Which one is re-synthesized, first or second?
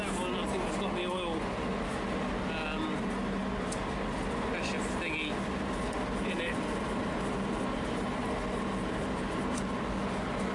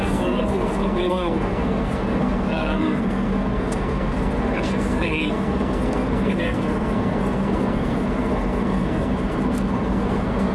second